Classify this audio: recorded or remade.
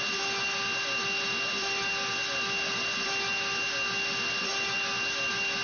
recorded